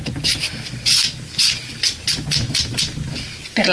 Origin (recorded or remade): recorded